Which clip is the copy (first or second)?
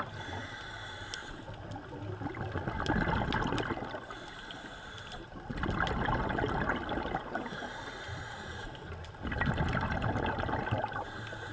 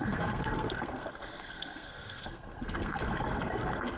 second